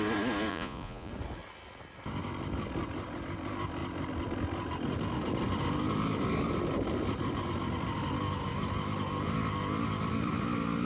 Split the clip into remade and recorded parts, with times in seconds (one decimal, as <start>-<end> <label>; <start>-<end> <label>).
0.0-0.5 recorded; 0.5-1.1 remade; 1.1-10.9 recorded